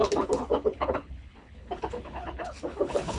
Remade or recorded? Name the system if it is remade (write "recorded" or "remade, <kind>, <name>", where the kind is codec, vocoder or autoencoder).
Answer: remade, codec, HILCodec